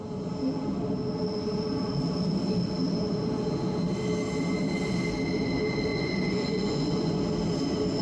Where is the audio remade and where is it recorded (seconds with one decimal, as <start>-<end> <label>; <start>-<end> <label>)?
0.0-5.9 recorded; 5.9-7.2 remade; 7.2-8.0 recorded